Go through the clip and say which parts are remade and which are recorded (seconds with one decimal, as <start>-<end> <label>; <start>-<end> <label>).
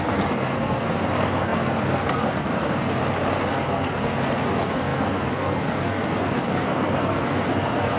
0.0-3.0 remade; 3.0-3.5 recorded; 3.5-8.0 remade